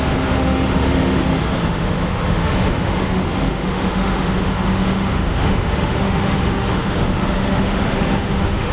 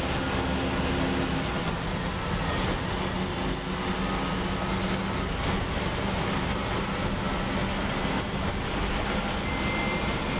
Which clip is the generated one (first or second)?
first